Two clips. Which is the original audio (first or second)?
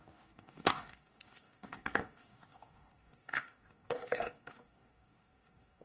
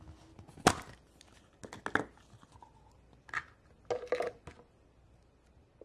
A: second